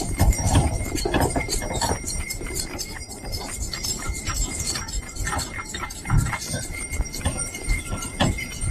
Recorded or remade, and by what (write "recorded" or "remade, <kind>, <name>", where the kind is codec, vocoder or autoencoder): remade, vocoder, BigVGAN v2